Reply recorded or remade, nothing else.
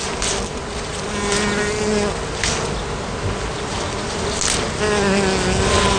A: recorded